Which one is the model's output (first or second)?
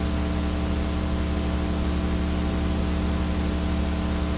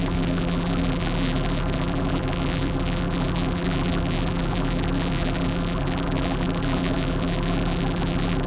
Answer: second